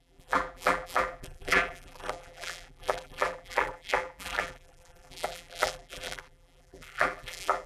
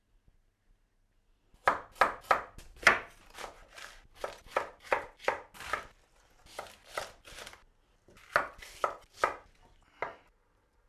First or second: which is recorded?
second